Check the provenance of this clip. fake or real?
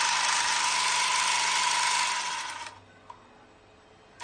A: real